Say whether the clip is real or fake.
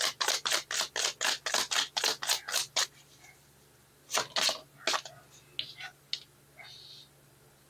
real